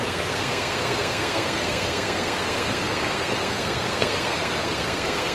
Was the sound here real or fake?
fake